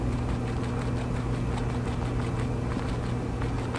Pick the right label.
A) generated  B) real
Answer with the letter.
B